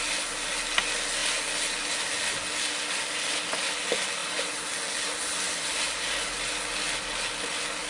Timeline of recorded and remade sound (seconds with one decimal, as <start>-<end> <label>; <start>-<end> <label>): 0.0-4.2 recorded; 4.2-4.7 remade; 4.7-7.9 recorded